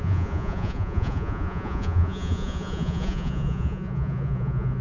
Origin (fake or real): fake